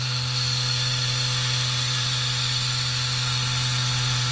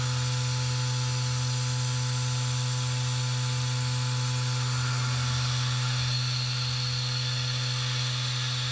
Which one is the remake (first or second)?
first